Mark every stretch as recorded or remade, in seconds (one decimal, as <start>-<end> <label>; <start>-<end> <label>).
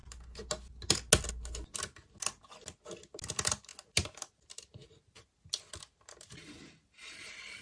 0.0-7.6 recorded